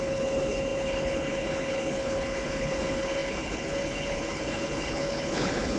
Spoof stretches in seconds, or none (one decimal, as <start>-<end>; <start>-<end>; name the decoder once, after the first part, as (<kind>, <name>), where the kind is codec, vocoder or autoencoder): 0.0-5.8 (codec, HILCodec)